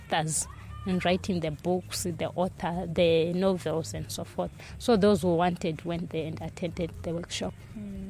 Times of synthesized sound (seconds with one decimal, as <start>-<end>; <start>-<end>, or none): 0.8-4.7